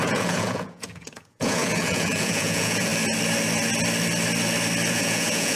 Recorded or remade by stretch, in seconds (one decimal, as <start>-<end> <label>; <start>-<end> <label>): 0.0-2.9 remade; 2.9-4.9 recorded; 4.9-5.6 remade